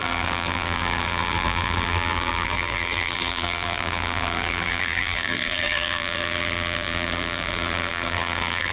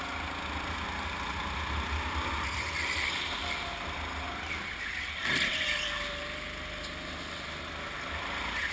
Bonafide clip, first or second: second